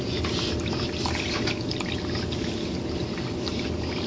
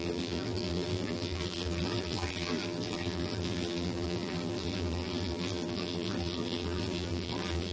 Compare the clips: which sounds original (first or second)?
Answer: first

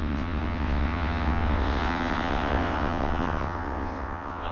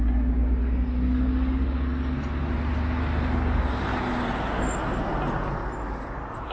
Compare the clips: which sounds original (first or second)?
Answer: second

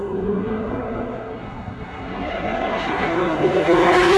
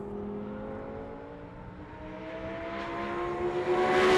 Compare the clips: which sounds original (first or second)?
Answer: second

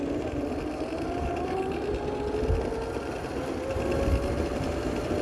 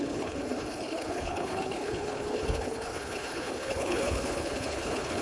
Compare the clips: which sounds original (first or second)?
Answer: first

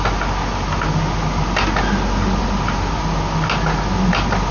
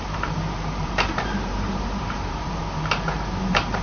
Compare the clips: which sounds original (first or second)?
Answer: first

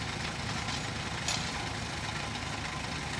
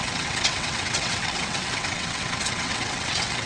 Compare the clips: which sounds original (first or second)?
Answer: first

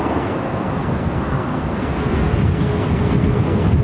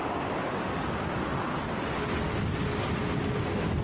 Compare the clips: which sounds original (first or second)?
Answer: second